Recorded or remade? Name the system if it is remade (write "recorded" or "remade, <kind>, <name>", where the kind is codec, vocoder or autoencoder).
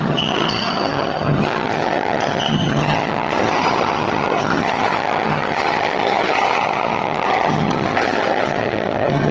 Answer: remade, vocoder, HiFi-GAN